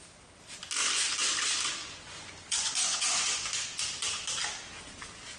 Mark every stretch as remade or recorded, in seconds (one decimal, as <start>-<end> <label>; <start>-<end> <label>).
0.0-1.8 recorded; 1.8-3.8 remade; 3.8-5.4 recorded

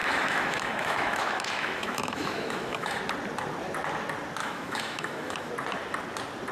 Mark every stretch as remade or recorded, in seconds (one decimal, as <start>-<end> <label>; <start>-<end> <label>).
0.0-3.0 remade; 3.0-4.4 recorded; 4.4-5.5 remade; 5.5-6.5 recorded

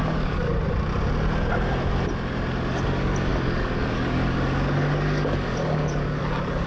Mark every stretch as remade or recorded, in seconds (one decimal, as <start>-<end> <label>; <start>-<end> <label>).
0.0-0.5 remade; 0.5-2.7 recorded; 2.7-6.7 remade